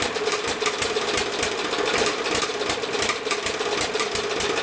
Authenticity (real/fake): fake